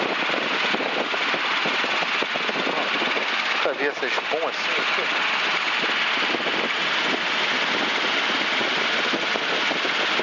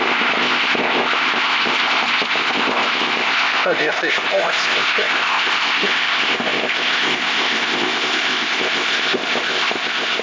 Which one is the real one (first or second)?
first